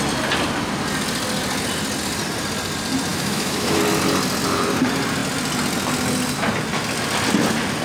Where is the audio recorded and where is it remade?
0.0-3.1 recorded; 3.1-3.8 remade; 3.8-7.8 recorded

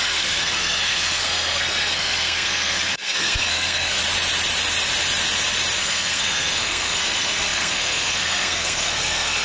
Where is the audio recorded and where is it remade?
0.0-4.0 remade; 4.0-5.8 recorded; 5.8-9.4 remade

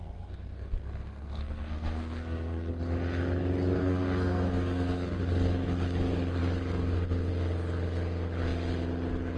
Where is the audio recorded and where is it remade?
0.0-2.7 remade; 2.7-3.8 recorded; 3.8-5.2 remade; 5.2-9.4 recorded

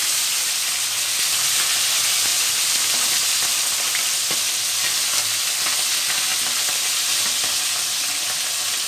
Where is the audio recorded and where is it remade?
0.0-2.3 recorded; 2.3-2.8 remade; 2.8-8.9 recorded

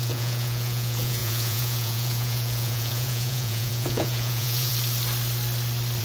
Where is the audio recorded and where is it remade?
0.0-4.7 remade; 4.7-6.0 recorded

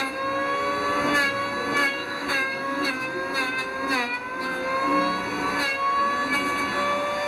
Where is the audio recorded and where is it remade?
0.0-1.8 recorded; 1.8-2.9 remade; 2.9-7.3 recorded

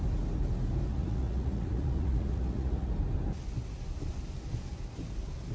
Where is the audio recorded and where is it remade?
0.0-0.9 recorded; 0.9-2.9 remade; 2.9-5.5 recorded